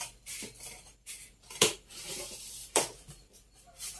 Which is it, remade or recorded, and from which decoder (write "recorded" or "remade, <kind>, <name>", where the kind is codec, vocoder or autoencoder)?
remade, vocoder, BigVGAN v2